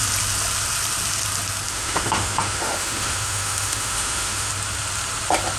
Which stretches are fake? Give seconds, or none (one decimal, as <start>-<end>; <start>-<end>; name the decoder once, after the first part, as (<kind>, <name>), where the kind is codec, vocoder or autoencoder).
1.7-4.5 (autoencoder, DAC-VAE)